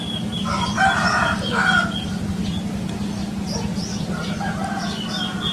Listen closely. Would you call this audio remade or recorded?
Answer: recorded